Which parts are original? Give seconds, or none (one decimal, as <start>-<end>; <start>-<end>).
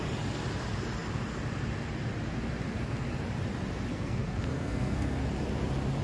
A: 0.0-3.9; 5.2-6.0